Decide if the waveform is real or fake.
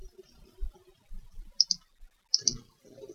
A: real